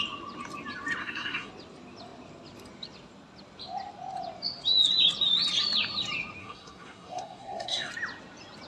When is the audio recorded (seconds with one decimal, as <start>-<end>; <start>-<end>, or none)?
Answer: 0.0-1.0; 1.5-6.4; 7.9-8.7